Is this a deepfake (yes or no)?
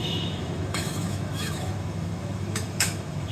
yes